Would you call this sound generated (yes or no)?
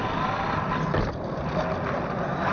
no